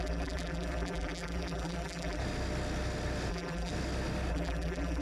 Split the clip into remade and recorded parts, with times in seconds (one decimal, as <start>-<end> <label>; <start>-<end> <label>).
0.0-2.2 remade; 2.2-3.3 recorded; 3.3-3.7 remade; 3.7-4.3 recorded; 4.3-5.0 remade